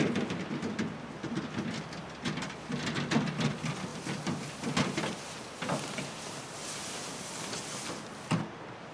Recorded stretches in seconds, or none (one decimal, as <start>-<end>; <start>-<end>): 0.0-8.9